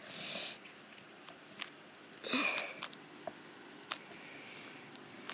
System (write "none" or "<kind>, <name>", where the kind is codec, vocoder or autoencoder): none